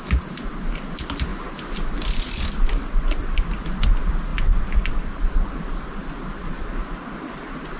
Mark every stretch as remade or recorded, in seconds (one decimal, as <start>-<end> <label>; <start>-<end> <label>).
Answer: 0.0-7.8 recorded

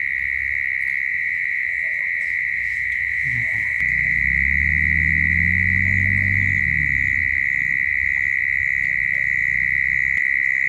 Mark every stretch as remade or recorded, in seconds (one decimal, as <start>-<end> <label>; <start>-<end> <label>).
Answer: 0.0-1.1 recorded; 1.1-4.2 remade; 4.2-10.7 recorded

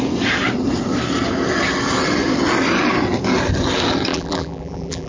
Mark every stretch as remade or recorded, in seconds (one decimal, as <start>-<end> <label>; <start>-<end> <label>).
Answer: 0.0-4.1 recorded; 4.1-5.1 remade